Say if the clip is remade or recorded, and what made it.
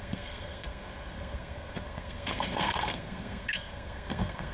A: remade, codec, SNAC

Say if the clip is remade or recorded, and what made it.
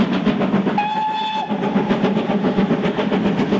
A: recorded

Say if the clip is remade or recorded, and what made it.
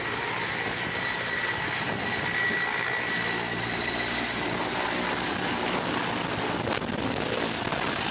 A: recorded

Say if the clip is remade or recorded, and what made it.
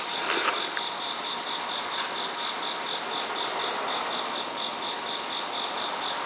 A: recorded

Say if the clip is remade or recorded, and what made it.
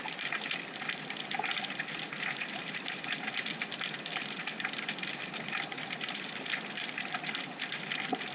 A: recorded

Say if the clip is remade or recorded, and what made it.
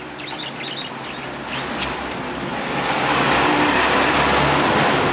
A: recorded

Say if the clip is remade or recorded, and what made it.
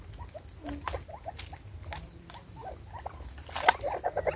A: recorded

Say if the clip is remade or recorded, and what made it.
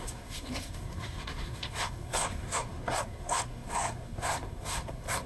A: remade, codec, SNAC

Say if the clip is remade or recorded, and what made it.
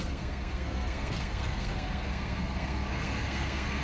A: remade, codec, SNAC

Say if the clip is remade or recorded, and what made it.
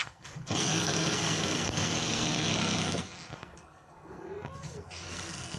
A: remade, codec, SNAC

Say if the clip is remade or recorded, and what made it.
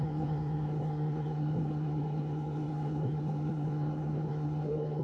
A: remade, codec, SNAC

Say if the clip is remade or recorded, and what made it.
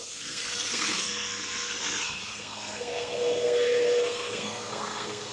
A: remade, codec, SNAC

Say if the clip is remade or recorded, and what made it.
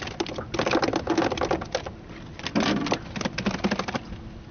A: recorded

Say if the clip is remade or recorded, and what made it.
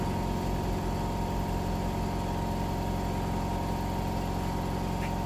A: recorded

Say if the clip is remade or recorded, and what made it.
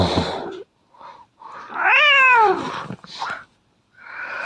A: recorded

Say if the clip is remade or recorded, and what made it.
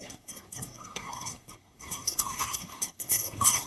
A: remade, codec, SNAC